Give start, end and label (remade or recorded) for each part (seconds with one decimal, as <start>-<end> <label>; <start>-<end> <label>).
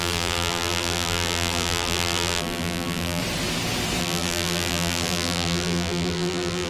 0.0-3.2 remade; 3.2-4.0 recorded; 4.0-6.7 remade